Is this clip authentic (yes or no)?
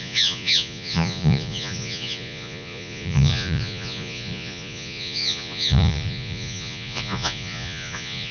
no